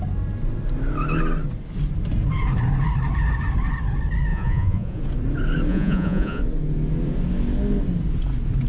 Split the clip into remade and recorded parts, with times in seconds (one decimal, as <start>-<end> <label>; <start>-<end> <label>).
0.0-4.3 recorded; 4.3-5.0 remade; 5.0-5.7 recorded; 5.7-6.4 remade; 6.4-8.7 recorded